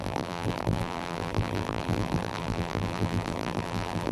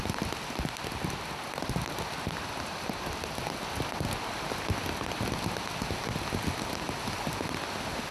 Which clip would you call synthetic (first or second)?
first